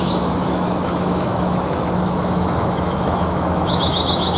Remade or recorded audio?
remade